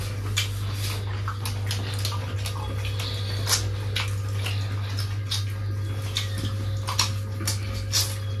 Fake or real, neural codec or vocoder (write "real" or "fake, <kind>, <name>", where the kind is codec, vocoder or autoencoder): real